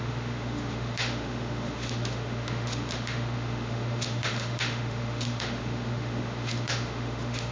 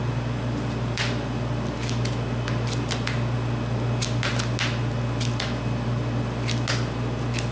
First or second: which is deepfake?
first